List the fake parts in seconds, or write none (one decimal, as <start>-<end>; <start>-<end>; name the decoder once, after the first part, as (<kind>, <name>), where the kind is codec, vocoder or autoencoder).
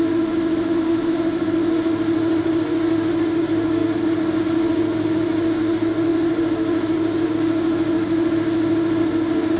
none